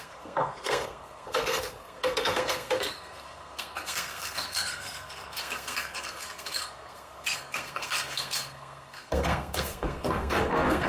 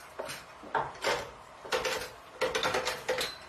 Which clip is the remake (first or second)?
first